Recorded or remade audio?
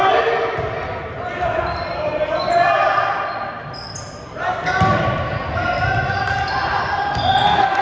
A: recorded